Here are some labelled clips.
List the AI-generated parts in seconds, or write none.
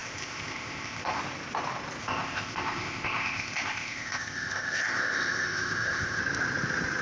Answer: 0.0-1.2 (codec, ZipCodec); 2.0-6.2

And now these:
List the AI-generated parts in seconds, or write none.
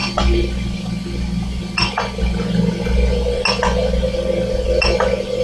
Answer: none